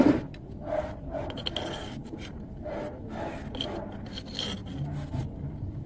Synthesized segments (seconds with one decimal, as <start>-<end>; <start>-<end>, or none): 2.0-2.9